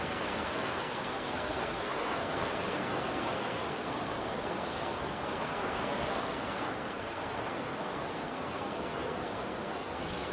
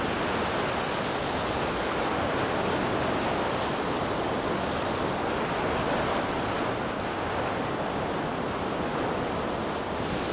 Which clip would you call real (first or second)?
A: second